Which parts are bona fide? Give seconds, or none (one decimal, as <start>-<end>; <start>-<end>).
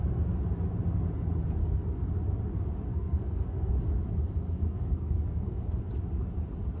0.0-1.6; 2.1-2.9; 3.7-4.2; 5.8-6.8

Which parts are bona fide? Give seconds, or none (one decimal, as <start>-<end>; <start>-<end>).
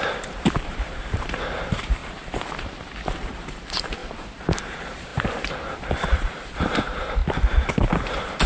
4.0-4.6; 7.2-7.9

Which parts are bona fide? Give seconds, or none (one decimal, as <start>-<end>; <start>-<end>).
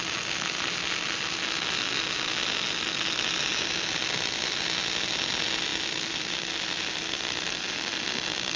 0.0-5.7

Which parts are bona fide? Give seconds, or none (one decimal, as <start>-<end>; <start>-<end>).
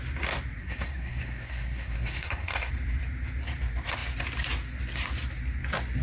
0.0-0.6; 2.7-6.0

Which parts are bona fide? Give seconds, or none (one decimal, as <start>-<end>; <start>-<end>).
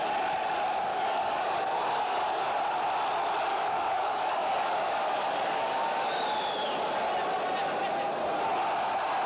0.0-0.9; 2.6-3.5; 6.1-9.3